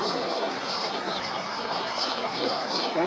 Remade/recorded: remade